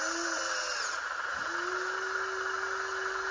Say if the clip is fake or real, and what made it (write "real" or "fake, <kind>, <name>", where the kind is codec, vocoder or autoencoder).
real